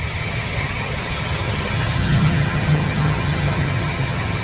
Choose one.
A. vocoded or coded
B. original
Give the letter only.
A